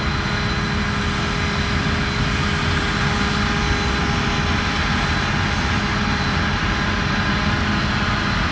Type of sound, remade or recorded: recorded